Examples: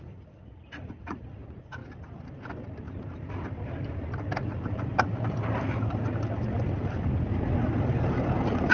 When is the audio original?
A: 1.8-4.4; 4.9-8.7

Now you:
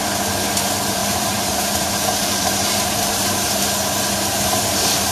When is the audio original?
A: 0.0-1.0; 3.5-5.1

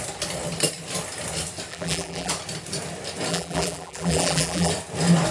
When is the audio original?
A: 0.0-1.7; 2.3-3.3; 4.7-5.3

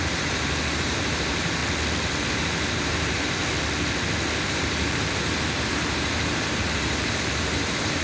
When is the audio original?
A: 1.6-2.3; 3.4-4.4